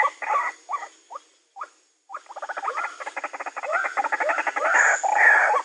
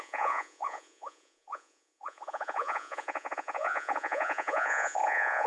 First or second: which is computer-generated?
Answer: second